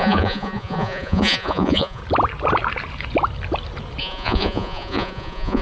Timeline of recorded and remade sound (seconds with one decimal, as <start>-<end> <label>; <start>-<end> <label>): 0.0-2.0 remade; 2.0-4.0 recorded; 4.0-5.6 remade